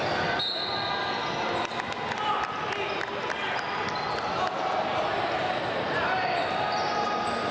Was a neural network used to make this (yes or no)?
no